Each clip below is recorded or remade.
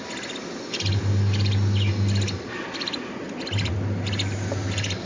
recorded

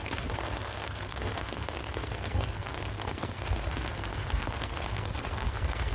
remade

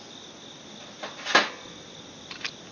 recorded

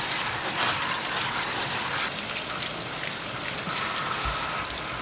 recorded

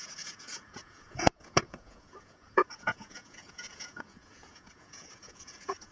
remade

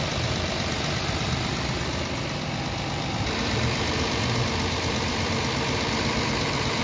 remade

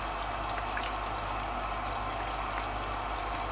recorded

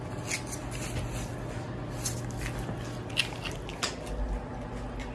recorded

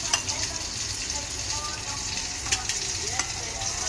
recorded